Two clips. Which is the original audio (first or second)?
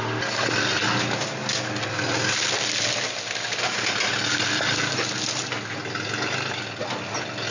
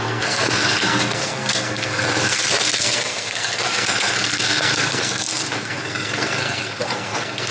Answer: first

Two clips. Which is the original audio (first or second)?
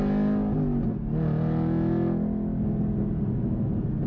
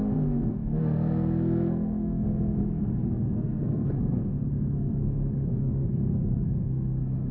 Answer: first